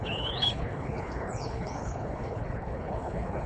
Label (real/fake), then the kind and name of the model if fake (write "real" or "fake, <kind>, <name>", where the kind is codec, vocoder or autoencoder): fake, codec, HILCodec